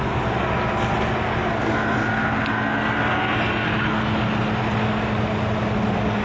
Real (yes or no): yes